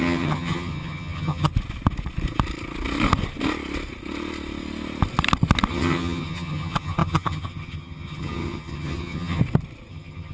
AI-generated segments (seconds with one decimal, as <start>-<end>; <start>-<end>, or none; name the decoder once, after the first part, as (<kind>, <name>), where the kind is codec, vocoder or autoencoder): 0.0-1.5 (vocoder, HiFi-GAN); 5.7-9.4; 9.9-10.3